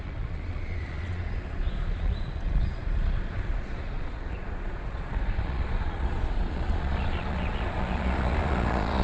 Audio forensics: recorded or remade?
remade